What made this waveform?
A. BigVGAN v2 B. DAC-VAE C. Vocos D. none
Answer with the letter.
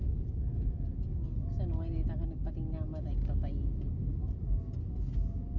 D